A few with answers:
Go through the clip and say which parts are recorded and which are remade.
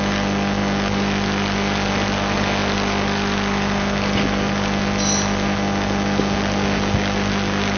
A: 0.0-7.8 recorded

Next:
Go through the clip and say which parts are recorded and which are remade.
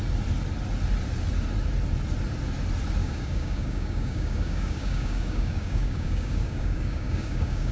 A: 0.0-3.0 recorded; 3.0-7.7 remade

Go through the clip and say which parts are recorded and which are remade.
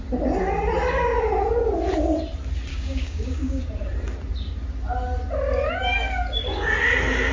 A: 0.0-2.7 recorded; 2.7-3.6 remade; 3.6-7.3 recorded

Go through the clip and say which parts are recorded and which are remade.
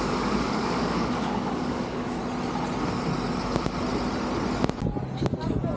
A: 0.0-2.2 remade; 2.2-5.8 recorded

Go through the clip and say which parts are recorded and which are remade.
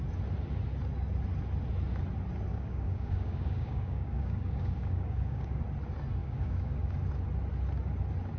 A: 0.0-2.5 recorded; 2.5-5.6 remade; 5.6-6.2 recorded; 6.2-6.9 remade; 6.9-8.4 recorded